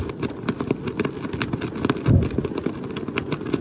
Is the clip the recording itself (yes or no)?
yes